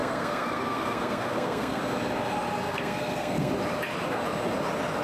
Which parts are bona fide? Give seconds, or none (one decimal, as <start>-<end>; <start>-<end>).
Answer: 1.8-2.5; 3.5-5.0